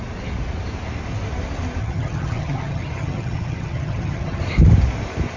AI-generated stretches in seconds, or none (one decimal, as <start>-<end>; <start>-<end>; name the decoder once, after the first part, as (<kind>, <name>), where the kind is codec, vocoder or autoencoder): 1.8-4.4 (vocoder, HiFi-GAN)